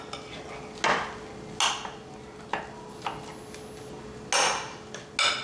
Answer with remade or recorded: recorded